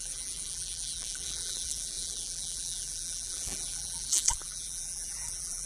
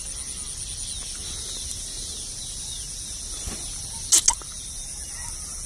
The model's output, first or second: first